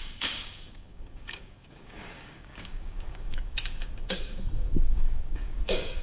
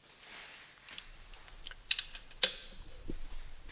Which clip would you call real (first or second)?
second